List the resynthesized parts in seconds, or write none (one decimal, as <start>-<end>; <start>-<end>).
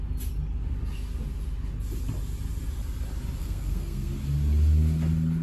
3.4-4.1